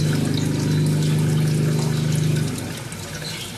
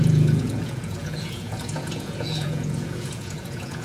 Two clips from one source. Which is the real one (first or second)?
first